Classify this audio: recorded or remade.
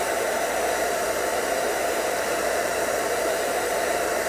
remade